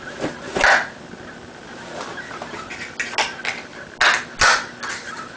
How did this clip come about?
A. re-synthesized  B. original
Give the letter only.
B